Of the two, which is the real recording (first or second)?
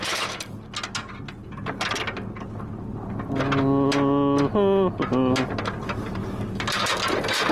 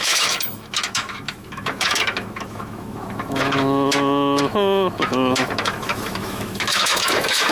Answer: first